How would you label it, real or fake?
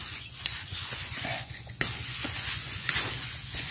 fake